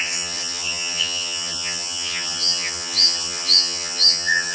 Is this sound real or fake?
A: fake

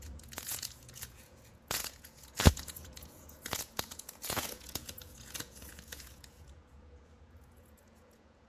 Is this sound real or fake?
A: fake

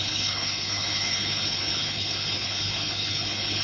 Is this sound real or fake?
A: fake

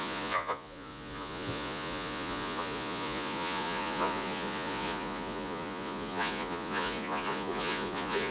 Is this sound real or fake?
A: fake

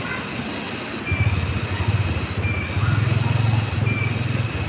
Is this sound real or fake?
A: real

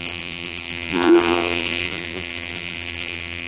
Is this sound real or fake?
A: fake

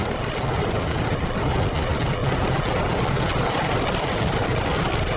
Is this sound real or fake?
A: real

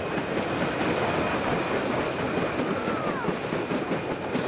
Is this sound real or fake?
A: real